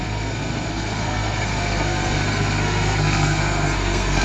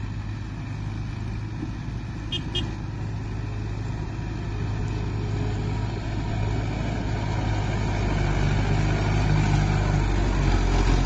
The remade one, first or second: first